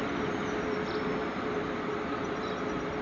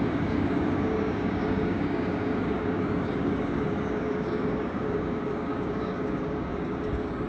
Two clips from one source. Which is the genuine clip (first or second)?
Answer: first